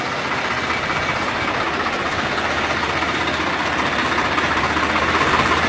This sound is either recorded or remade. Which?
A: recorded